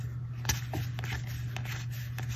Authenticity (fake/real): real